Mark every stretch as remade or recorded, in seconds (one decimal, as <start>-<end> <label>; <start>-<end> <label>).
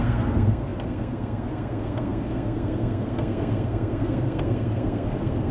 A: 0.0-5.5 remade